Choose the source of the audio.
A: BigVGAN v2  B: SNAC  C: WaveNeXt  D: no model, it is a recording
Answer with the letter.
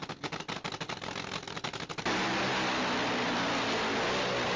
D